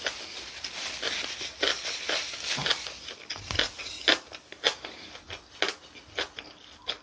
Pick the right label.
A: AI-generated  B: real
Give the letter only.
B